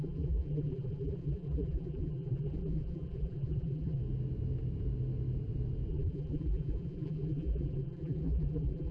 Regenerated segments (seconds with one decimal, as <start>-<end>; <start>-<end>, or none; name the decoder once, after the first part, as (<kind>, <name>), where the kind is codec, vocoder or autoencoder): 0.0-4.0 (vocoder, BigVGAN v2); 5.9-8.9